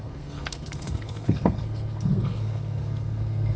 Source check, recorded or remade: remade